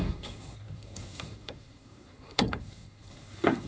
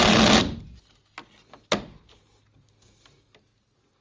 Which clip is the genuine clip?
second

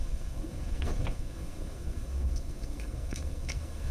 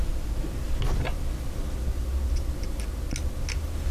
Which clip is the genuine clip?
second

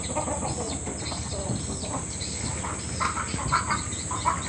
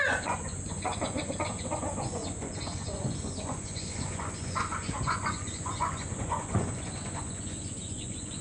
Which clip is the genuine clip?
first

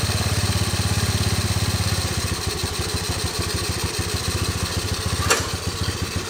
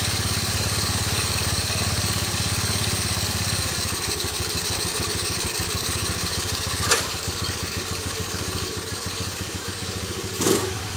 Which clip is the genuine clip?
first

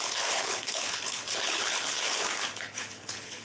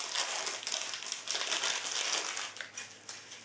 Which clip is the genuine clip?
second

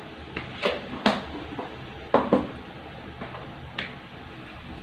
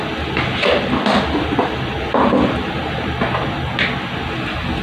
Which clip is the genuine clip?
second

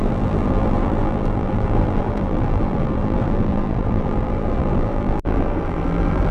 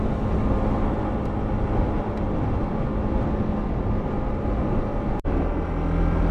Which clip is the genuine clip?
second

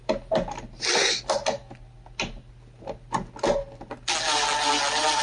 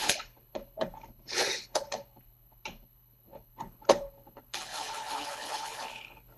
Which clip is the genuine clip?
first